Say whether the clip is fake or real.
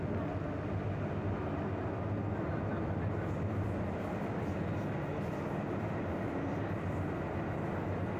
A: real